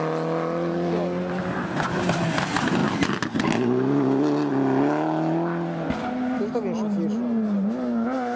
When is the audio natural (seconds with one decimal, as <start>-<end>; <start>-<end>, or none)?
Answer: 0.0-8.4